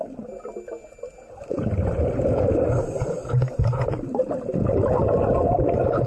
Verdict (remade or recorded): recorded